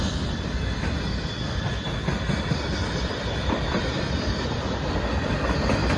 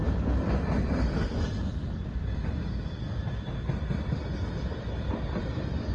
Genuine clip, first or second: second